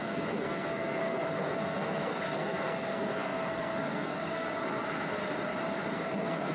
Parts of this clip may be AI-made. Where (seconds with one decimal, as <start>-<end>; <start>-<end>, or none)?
0.0-5.2; 5.9-6.5